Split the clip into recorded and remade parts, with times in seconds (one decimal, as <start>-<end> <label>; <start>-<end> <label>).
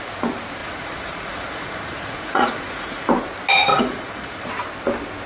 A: 0.0-0.6 recorded; 0.6-3.1 remade; 3.1-3.7 recorded; 3.7-4.5 remade; 4.5-5.3 recorded